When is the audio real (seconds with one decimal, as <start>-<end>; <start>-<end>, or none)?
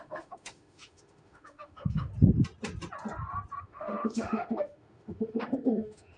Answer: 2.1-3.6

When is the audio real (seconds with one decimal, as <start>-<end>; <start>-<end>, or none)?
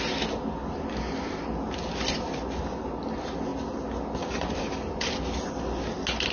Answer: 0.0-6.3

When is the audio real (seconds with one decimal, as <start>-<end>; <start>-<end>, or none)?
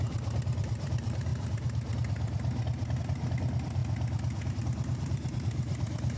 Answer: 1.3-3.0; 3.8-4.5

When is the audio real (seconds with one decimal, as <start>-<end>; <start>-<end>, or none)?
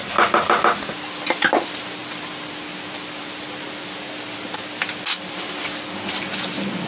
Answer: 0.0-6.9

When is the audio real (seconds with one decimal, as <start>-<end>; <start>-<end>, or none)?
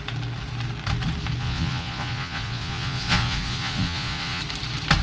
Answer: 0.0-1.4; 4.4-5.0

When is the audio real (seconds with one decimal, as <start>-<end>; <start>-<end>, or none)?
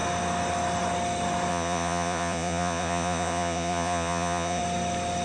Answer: 0.0-1.5; 4.6-5.2